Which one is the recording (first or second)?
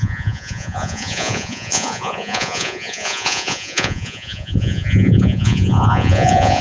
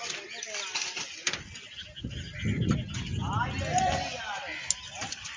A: second